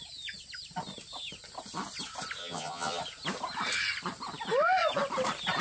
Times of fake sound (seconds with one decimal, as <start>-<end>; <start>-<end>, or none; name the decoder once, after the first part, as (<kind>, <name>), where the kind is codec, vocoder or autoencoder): 2.4-3.0 (vocoder, HiFi-GAN)